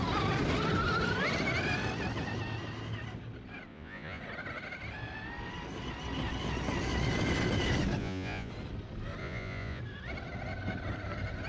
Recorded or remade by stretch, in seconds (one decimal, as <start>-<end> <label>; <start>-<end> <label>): 0.0-3.7 recorded; 3.7-4.2 remade; 4.2-8.0 recorded; 8.0-8.5 remade; 8.5-9.2 recorded; 9.2-9.8 remade; 9.8-11.5 recorded